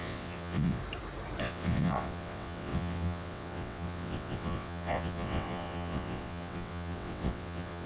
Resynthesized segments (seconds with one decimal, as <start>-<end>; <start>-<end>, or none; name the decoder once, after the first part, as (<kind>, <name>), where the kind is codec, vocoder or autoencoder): 0.0-0.8 (vocoder, WaveNeXt); 1.4-7.9